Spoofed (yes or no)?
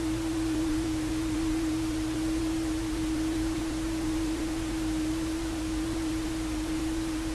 yes